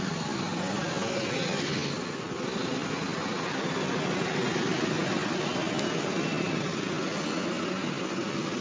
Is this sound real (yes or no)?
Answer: yes